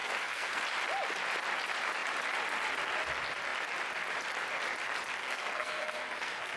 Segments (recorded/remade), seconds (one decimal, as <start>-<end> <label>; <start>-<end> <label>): 0.0-0.6 remade; 0.6-5.2 recorded; 5.2-6.6 remade